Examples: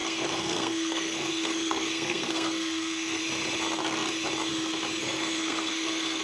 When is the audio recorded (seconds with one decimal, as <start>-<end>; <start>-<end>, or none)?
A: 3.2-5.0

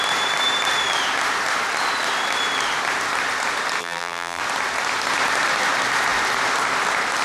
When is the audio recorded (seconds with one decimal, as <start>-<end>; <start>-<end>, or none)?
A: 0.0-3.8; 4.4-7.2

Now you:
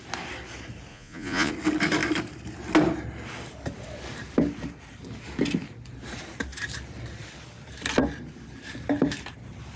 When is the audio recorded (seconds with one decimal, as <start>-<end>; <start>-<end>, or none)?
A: 0.0-0.9; 1.5-9.8

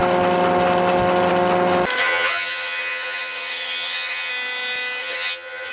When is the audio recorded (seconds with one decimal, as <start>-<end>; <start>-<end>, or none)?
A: 0.0-2.0; 4.3-5.0

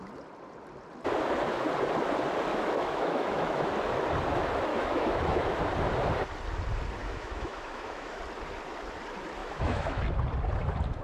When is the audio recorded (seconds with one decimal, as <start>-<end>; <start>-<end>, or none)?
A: 0.0-2.5; 3.7-4.7; 5.6-7.0; 8.2-9.4; 10.0-11.0

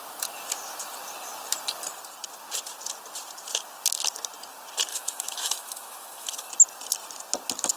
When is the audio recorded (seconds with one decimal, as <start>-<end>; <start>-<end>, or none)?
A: 0.0-4.9; 6.5-7.8

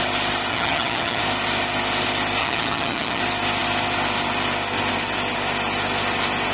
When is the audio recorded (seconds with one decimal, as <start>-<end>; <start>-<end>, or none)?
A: 0.0-0.5; 1.2-2.4; 3.2-6.5